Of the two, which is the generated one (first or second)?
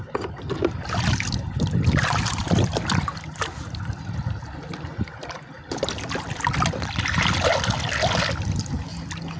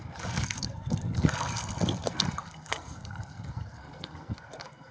second